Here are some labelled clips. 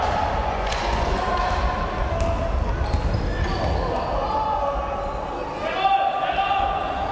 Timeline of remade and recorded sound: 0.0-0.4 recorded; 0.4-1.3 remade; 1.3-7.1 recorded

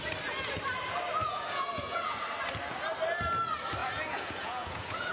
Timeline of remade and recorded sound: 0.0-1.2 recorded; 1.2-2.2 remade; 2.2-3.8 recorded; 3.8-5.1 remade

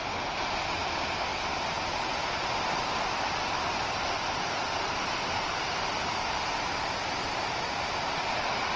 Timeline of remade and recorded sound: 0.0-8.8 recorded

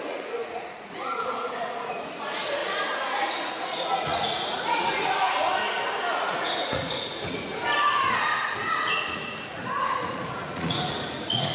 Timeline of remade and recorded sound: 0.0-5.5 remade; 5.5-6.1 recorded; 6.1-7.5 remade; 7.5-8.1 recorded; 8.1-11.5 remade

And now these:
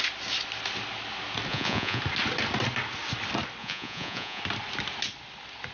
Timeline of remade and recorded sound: 0.0-1.5 recorded; 1.5-2.0 remade; 2.0-3.6 recorded; 3.6-4.4 remade; 4.4-5.7 recorded

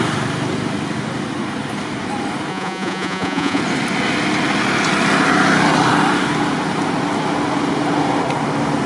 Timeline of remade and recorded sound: 0.0-2.5 recorded; 2.5-3.6 remade; 3.6-8.9 recorded